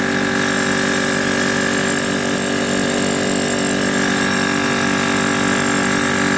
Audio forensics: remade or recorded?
recorded